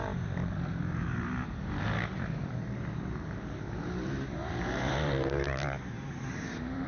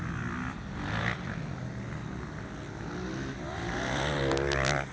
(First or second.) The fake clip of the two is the first